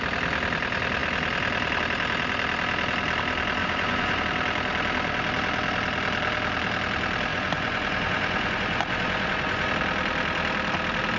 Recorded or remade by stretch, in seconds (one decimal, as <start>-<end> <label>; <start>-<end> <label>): 0.0-3.6 recorded; 3.6-4.2 remade; 4.2-7.3 recorded; 7.3-9.7 remade; 9.7-11.2 recorded